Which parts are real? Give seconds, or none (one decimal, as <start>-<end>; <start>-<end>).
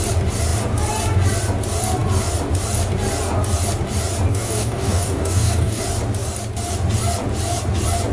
0.0-4.3; 5.8-8.1